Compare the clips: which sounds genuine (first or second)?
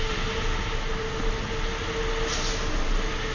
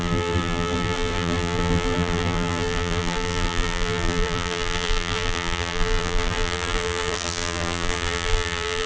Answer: first